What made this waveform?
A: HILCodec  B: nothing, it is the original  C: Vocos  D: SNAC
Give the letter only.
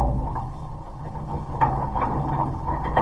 A